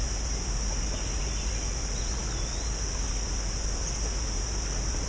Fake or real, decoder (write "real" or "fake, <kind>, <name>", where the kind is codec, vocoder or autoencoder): real